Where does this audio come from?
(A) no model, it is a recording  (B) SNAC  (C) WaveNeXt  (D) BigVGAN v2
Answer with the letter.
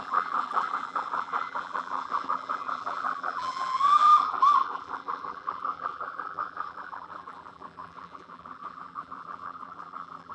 D